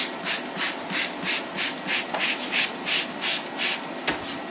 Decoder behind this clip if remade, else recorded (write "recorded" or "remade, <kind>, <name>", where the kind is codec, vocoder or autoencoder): recorded